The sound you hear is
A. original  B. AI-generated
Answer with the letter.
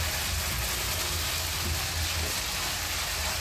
A